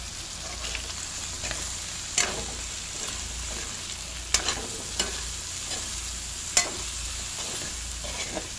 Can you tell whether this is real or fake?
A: real